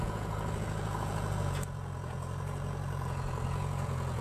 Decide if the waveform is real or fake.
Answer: fake